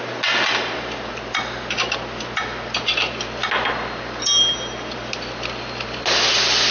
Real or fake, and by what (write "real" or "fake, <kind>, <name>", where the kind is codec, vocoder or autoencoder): real